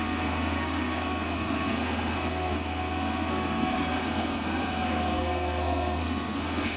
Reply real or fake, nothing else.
fake